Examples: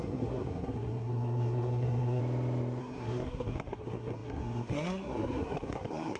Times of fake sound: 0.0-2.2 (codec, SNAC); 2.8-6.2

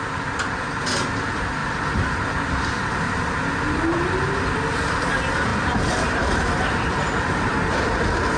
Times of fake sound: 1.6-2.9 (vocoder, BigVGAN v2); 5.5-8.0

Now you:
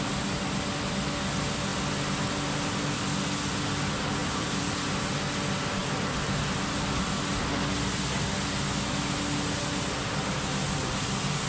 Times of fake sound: 4.2-4.8 (vocoder, BigVGAN v2)

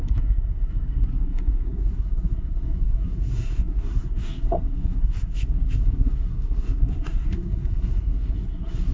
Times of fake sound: 0.0-8.9 (codec, SNAC)